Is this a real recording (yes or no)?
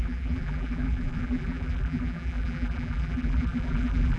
no